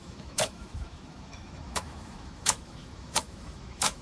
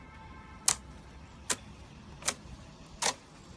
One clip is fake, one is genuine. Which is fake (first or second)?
first